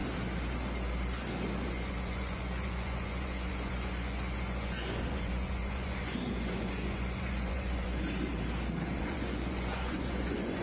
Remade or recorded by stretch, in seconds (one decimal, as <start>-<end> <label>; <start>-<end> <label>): 0.0-1.7 recorded; 1.7-8.3 remade; 8.3-9.0 recorded; 9.0-10.6 remade